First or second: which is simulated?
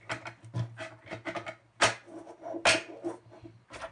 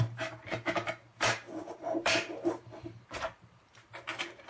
second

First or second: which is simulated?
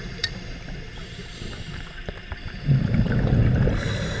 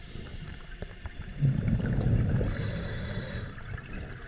second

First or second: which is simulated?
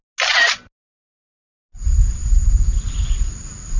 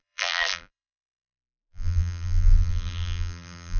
second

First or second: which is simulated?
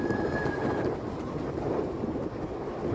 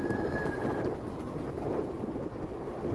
second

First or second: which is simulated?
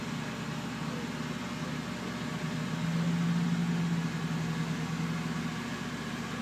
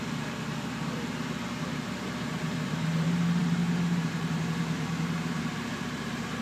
second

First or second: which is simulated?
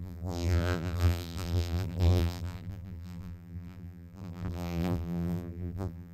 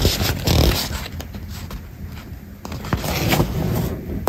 first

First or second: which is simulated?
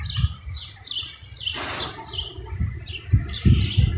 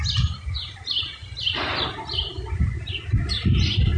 second